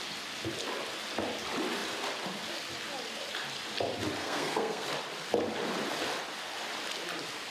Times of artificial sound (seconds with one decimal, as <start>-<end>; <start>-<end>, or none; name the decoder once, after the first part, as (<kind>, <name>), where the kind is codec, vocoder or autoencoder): 4.2-4.9 (codec, SNAC)